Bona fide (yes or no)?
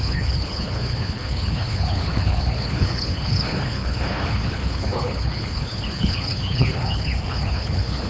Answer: no